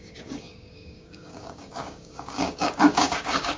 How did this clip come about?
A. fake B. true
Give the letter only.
A